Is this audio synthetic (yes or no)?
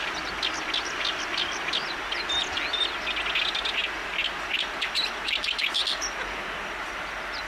no